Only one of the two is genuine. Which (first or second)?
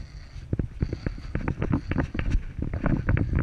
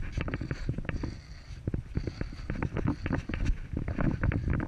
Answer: first